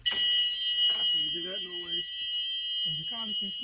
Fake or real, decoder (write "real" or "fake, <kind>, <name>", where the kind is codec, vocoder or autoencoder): real